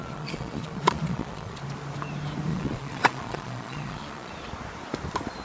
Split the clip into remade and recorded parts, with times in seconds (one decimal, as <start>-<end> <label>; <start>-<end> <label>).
0.0-1.6 remade; 1.6-2.5 recorded; 2.5-4.3 remade; 4.3-5.4 recorded